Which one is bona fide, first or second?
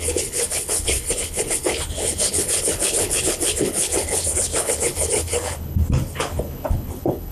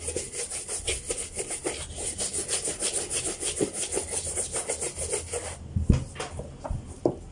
second